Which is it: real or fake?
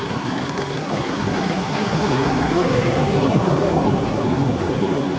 fake